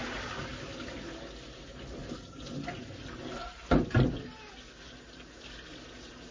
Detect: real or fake real